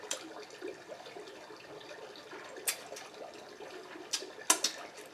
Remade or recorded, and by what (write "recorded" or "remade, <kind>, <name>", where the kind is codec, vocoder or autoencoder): recorded